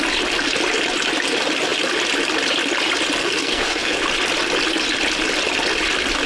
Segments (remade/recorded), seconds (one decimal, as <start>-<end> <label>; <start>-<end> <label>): 0.0-3.2 recorded; 3.2-4.0 remade; 4.0-6.3 recorded

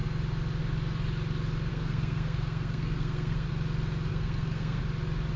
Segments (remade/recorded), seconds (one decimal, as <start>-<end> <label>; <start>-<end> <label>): 0.0-1.7 recorded; 1.7-3.5 remade; 3.5-4.1 recorded; 4.1-4.8 remade; 4.8-5.4 recorded

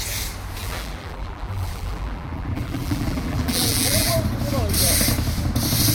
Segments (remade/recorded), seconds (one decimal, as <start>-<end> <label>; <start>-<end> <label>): 0.0-0.6 recorded; 0.6-4.1 remade; 4.1-5.9 recorded

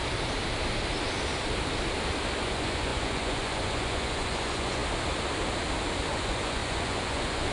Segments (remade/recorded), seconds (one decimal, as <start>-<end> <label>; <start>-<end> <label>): 0.0-2.4 recorded; 2.4-4.8 remade; 4.8-6.1 recorded; 6.1-7.5 remade

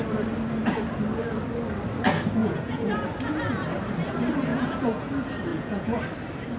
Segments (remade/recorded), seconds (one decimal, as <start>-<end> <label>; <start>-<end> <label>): 0.0-2.4 recorded; 2.4-2.9 remade; 2.9-4.5 recorded; 4.5-5.1 remade; 5.1-5.5 recorded; 5.5-6.0 remade; 6.0-6.6 recorded